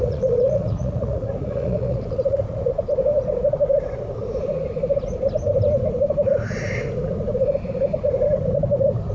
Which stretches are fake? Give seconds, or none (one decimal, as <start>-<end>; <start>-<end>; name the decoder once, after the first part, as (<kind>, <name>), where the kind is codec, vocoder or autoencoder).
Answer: 0.0-2.8 (vocoder, Vocos)